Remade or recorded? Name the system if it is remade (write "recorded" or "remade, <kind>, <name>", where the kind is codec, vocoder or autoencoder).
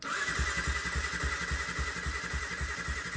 recorded